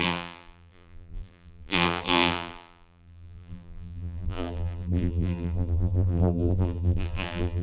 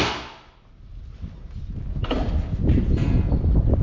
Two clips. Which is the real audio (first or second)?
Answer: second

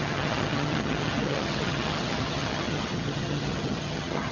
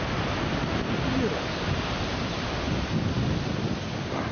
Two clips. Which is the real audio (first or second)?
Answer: second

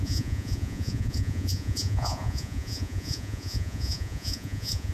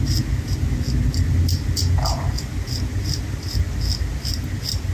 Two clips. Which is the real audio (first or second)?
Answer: second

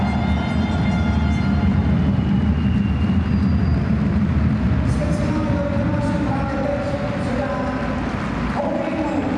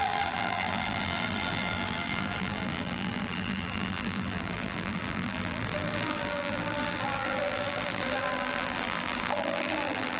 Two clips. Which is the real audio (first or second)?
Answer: first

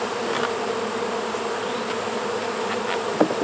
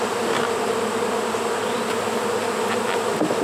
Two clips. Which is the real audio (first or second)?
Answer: second